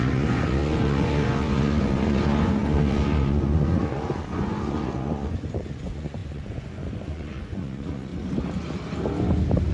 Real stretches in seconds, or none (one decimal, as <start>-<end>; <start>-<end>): 8.1-9.7

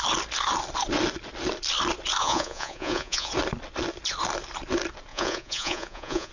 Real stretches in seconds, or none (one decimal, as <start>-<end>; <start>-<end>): 0.0-2.2; 3.3-5.1

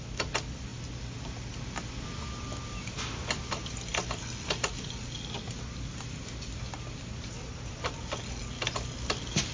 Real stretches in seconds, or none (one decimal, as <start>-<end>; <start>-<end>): 0.0-9.5

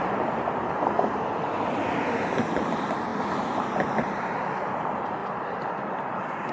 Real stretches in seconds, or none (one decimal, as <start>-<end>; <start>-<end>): 0.0-6.5

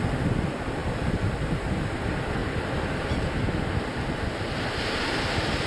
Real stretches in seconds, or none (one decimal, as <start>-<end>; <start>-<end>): 0.0-5.7

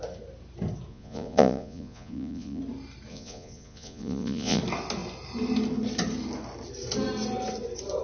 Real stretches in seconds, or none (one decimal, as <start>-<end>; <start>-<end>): 0.0-0.9; 2.6-3.1; 4.6-8.0